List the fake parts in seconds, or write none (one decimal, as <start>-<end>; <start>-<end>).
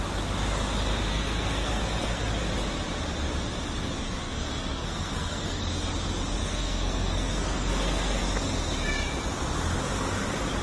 1.1-2.2; 4.2-5.6; 6.4-8.2